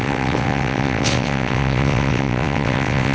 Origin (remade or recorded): remade